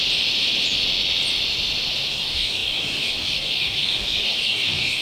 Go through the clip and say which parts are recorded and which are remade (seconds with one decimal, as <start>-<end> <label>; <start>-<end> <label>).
0.0-2.1 recorded; 2.1-5.0 remade